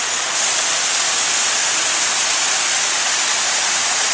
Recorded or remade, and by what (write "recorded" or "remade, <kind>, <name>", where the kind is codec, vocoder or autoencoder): recorded